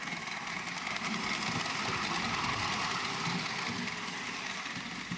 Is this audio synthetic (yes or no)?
no